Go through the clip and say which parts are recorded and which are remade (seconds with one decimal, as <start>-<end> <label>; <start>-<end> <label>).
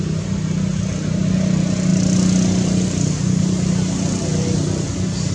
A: 0.0-5.3 recorded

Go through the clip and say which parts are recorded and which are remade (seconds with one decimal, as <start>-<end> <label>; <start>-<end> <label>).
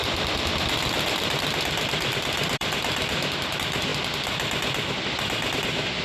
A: 0.0-6.0 remade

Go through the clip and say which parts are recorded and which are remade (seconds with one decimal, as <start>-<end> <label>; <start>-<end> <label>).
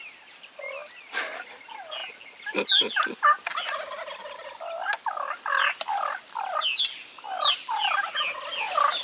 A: 0.0-9.0 recorded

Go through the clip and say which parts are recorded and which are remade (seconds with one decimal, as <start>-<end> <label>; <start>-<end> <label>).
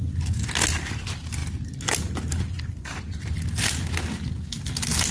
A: 0.0-5.1 recorded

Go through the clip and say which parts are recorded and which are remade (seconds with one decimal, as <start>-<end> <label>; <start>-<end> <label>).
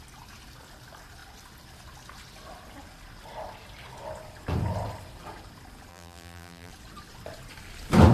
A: 0.0-5.9 recorded; 5.9-6.7 remade; 6.7-8.1 recorded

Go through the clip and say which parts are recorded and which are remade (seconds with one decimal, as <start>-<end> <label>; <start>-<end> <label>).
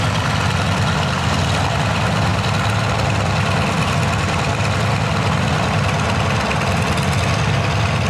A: 0.0-8.1 recorded